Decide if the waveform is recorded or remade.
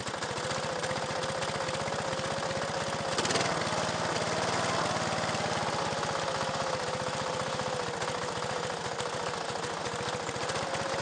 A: recorded